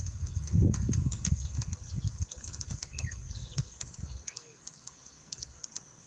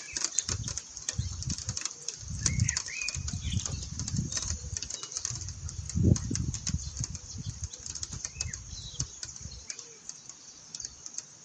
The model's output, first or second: first